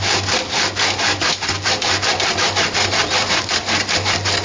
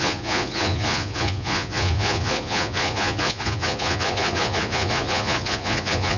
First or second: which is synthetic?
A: second